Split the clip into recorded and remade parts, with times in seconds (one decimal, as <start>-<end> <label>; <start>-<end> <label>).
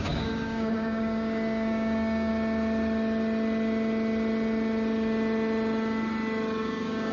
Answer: 0.0-2.3 remade; 2.3-6.6 recorded; 6.6-7.1 remade